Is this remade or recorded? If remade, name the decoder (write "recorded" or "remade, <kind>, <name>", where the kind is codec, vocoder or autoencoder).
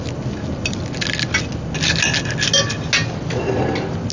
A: recorded